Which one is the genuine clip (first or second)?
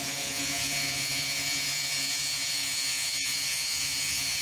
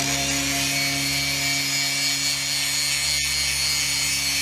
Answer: second